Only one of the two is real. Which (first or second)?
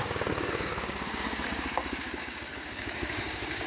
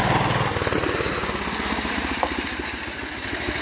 second